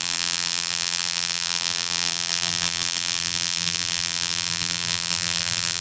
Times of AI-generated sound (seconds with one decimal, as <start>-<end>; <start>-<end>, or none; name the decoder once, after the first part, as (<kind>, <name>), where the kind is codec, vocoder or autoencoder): 0.0-5.8 (vocoder, BigVGAN v2)